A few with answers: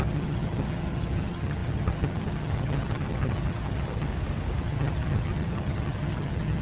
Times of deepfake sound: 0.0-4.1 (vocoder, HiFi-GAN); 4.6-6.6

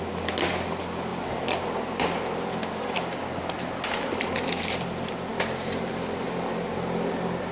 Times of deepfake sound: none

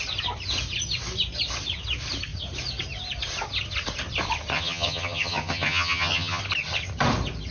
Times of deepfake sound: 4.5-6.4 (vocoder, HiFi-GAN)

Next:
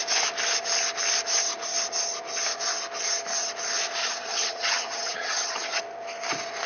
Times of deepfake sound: 4.0-5.8 (vocoder, HiFi-GAN)